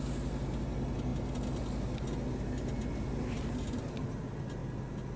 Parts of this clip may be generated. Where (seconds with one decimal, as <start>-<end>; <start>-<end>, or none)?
none